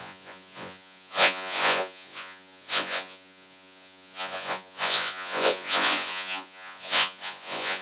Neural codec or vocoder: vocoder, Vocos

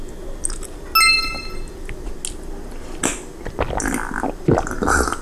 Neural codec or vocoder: none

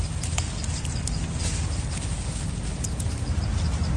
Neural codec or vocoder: none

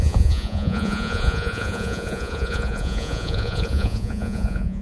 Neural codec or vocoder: vocoder, Vocos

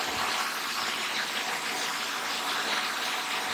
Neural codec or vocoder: none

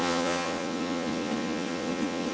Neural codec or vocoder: vocoder, Vocos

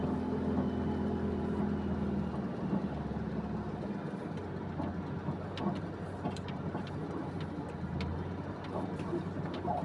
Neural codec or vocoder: none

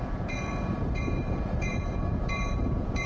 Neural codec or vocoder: vocoder, Vocos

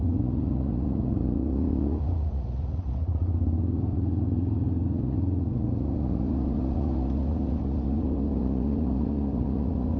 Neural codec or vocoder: vocoder, Vocos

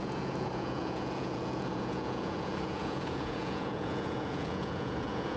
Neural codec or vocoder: vocoder, Vocos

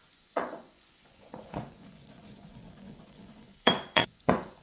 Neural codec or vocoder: vocoder, Vocos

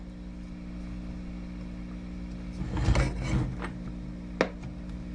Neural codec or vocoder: none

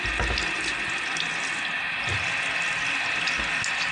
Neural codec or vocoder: none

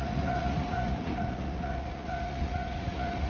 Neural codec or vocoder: vocoder, Vocos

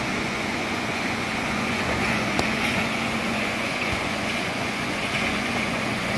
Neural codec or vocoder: vocoder, Vocos